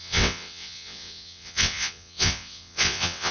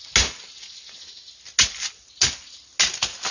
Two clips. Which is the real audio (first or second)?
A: second